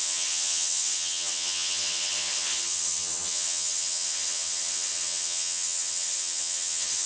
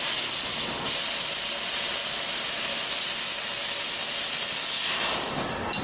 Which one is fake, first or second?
first